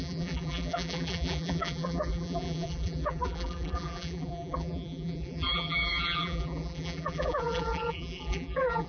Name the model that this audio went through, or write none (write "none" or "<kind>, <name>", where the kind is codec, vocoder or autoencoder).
vocoder, BigVGAN v2